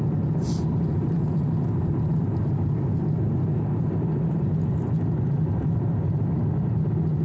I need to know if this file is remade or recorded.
recorded